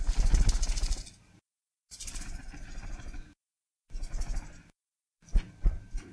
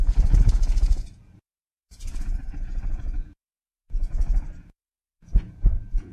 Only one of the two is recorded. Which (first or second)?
first